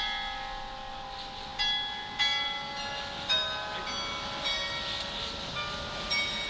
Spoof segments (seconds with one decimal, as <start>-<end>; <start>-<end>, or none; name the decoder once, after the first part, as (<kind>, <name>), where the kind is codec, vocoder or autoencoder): none

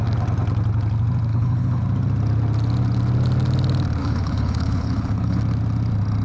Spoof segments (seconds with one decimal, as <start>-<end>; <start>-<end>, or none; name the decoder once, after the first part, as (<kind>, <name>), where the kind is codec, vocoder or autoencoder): 1.3-1.8 (codec, HILCodec); 4.0-5.4

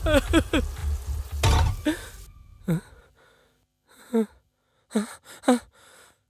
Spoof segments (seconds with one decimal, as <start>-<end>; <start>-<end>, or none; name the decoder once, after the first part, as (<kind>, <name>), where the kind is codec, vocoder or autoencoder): none

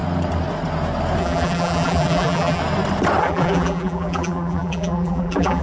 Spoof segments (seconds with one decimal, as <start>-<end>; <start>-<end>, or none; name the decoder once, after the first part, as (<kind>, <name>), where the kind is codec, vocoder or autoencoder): 1.2-2.6 (vocoder, BigVGAN v2); 3.2-5.6

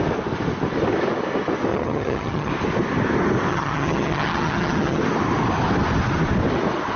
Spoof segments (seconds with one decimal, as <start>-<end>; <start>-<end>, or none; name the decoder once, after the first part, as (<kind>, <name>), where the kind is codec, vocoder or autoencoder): 1.7-2.5 (vocoder, HiFi-GAN); 3.5-5.0